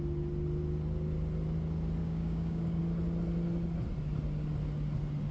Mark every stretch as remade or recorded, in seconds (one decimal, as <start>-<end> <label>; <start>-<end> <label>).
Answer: 0.0-2.0 recorded; 2.0-2.8 remade; 2.8-5.3 recorded